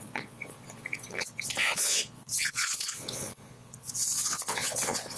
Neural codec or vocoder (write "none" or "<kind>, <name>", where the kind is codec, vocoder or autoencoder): vocoder, Vocos